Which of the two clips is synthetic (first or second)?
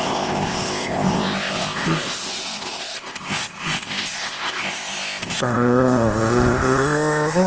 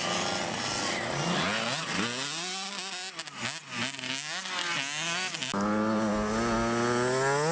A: first